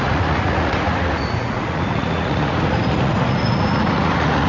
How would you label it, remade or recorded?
remade